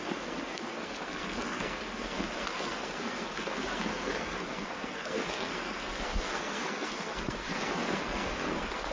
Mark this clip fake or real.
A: fake